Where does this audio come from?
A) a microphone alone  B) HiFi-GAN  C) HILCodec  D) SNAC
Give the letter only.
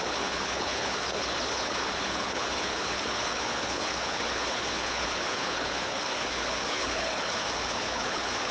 C